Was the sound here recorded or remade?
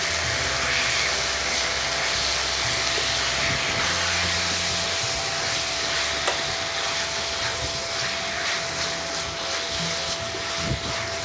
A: recorded